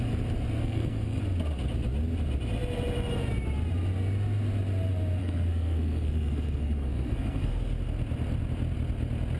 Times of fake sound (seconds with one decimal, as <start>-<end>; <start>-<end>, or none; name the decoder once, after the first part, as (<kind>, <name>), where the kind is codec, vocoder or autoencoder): 0.6-1.2 (codec, SNAC); 5.2-7.5

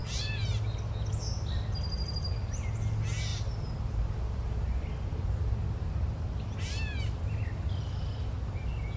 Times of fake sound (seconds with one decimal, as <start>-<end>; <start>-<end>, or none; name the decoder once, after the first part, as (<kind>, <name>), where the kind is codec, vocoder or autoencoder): none